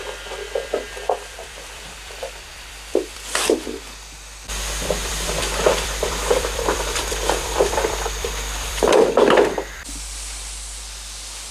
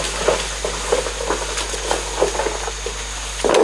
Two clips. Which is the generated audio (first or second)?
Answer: first